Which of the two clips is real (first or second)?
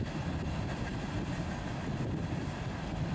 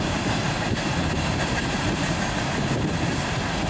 first